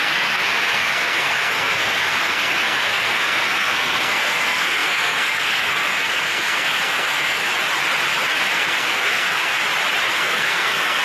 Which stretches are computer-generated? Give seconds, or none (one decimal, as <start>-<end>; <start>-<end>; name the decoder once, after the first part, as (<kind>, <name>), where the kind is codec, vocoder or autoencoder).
0.0-7.5 (codec, SNAC); 8.3-9.6; 10.1-11.0